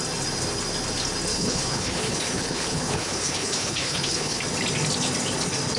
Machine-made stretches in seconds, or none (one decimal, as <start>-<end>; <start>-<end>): 1.3-4.4